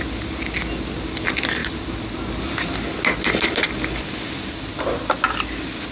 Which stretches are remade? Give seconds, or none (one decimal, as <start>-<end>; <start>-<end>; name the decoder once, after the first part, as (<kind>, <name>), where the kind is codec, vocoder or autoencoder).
none